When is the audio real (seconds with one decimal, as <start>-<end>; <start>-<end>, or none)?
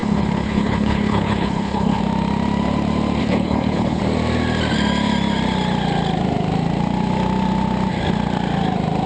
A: 2.0-3.2; 4.0-9.1